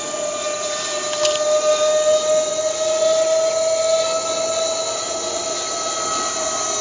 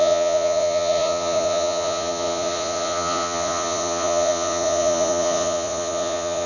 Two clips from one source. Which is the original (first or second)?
first